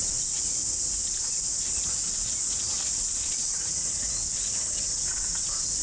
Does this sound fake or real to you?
fake